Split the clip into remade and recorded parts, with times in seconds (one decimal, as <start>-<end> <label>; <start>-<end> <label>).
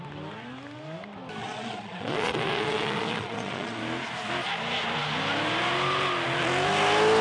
0.0-1.4 recorded; 1.4-3.8 remade; 3.8-7.2 recorded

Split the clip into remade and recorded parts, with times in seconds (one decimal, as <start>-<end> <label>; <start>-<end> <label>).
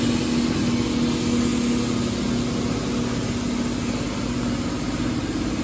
0.0-5.6 recorded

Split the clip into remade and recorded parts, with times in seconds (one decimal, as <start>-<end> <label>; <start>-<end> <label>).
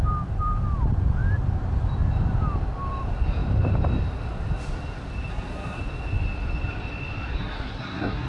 0.0-5.3 recorded; 5.3-5.8 remade; 5.8-7.4 recorded; 7.4-8.3 remade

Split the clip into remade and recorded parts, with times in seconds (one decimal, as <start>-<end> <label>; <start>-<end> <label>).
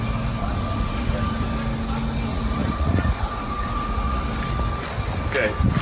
0.0-0.4 recorded; 0.4-1.1 remade; 1.1-2.3 recorded; 2.3-4.2 remade; 4.2-5.8 recorded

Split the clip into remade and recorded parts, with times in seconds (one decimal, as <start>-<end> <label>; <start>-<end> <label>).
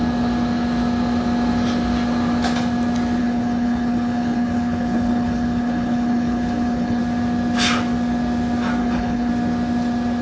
0.0-3.2 recorded; 3.2-7.0 remade; 7.0-8.8 recorded; 8.8-9.3 remade; 9.3-10.2 recorded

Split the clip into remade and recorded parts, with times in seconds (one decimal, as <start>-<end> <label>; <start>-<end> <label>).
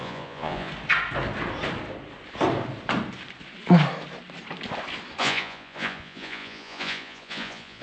0.0-0.7 remade; 0.7-5.2 recorded; 5.2-7.8 remade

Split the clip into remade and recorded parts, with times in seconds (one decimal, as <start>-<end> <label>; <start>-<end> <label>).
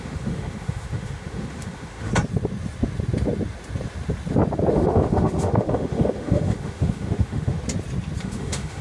0.0-2.1 remade; 2.1-4.7 recorded; 4.7-7.6 remade; 7.6-8.2 recorded; 8.2-8.8 remade